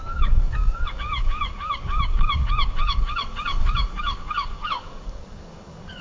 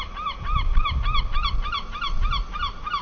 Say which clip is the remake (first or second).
first